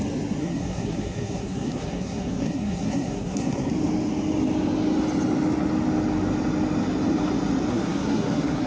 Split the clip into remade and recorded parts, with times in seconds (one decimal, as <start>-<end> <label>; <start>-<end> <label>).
0.0-0.4 recorded; 0.4-3.7 remade; 3.7-7.7 recorded; 7.7-8.7 remade

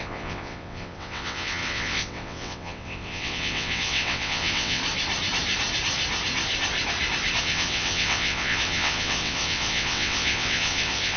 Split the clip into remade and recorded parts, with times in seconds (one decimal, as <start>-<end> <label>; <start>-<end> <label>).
0.0-4.8 remade; 4.8-7.4 recorded; 7.4-11.2 remade

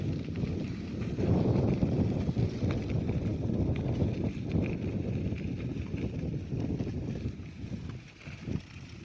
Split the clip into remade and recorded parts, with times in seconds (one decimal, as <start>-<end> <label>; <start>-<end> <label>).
0.0-9.0 recorded

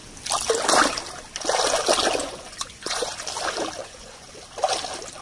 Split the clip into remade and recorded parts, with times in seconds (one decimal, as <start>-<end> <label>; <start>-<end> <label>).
0.0-2.2 recorded; 2.2-3.1 remade; 3.1-3.8 recorded; 3.8-4.3 remade; 4.3-5.2 recorded

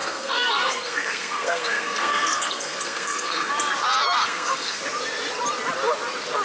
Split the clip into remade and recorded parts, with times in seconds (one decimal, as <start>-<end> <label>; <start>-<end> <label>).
0.0-3.5 remade; 3.5-4.2 recorded; 4.2-4.8 remade; 4.8-6.4 recorded

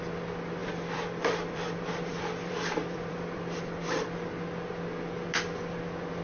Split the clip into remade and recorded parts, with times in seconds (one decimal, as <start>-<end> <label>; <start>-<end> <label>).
0.0-0.6 recorded; 0.6-4.3 remade; 4.3-6.2 recorded

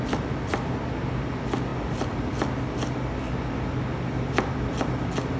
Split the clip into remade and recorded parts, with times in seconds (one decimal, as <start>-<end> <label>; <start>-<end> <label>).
0.0-5.4 recorded

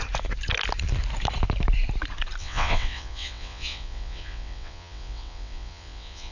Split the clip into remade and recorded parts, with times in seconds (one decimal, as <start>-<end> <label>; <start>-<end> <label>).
0.0-2.4 recorded; 2.4-6.3 remade